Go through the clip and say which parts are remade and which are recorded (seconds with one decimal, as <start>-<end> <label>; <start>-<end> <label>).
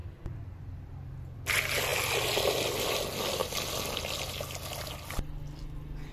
0.0-6.1 recorded